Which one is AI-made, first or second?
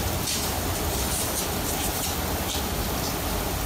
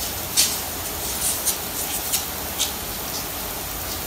first